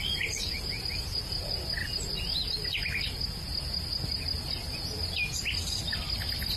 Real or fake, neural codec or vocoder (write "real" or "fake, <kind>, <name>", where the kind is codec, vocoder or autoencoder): real